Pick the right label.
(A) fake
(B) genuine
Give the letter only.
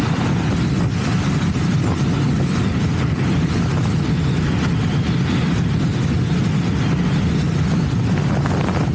B